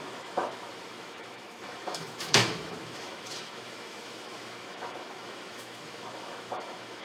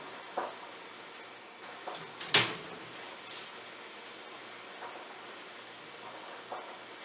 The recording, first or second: second